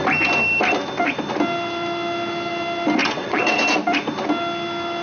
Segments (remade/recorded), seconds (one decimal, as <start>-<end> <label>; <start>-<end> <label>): 0.0-3.0 recorded; 3.0-3.6 remade; 3.6-5.0 recorded